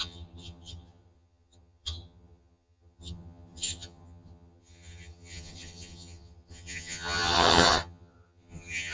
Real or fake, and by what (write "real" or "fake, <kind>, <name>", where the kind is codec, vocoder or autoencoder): fake, vocoder, HiFi-GAN